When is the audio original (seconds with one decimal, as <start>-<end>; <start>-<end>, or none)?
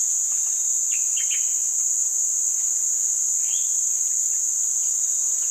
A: 0.0-5.5